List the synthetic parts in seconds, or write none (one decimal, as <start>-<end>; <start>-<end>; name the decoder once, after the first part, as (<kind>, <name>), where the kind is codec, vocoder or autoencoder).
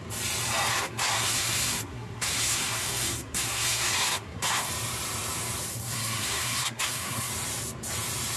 0.7-4.7 (codec, SNAC); 5.7-7.3